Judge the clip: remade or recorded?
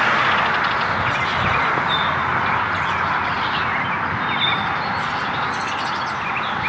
recorded